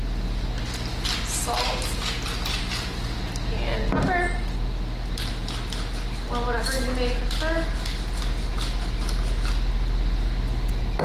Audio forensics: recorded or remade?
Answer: recorded